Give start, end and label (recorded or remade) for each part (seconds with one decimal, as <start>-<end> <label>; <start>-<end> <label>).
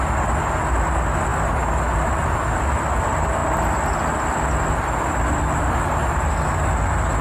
0.0-7.2 recorded